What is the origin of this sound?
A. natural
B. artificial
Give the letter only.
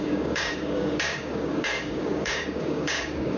B